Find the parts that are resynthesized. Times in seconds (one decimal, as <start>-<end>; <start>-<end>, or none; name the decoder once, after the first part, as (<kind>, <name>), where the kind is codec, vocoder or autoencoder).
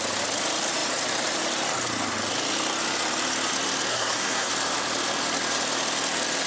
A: 3.9-4.5 (codec, SNAC)